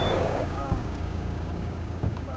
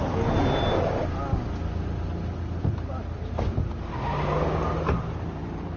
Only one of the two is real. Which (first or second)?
second